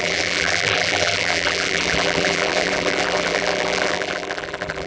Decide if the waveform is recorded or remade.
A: remade